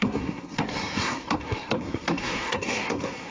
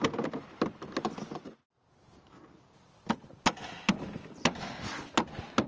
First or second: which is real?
second